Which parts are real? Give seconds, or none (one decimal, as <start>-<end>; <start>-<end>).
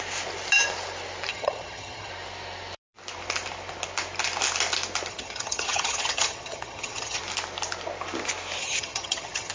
0.0-1.3; 2.1-5.1; 7.2-8.6